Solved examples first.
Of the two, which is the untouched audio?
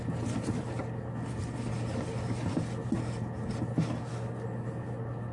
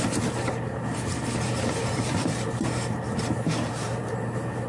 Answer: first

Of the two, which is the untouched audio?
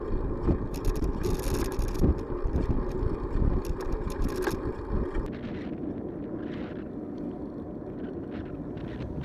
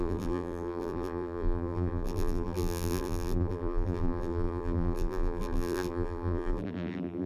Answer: first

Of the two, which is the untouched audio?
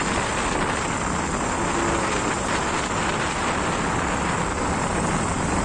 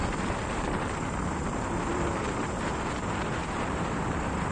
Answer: first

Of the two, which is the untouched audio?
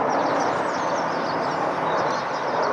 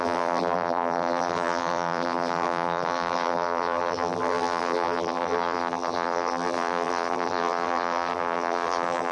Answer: first